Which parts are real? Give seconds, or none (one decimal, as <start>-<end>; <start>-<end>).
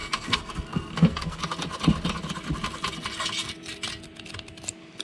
1.4-5.0